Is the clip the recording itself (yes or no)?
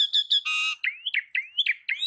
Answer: yes